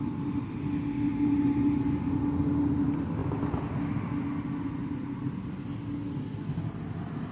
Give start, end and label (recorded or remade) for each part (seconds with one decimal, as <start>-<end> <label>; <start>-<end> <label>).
0.0-1.1 recorded; 1.1-2.2 remade; 2.2-4.8 recorded; 4.8-5.5 remade; 5.5-7.3 recorded